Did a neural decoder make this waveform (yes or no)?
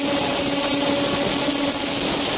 no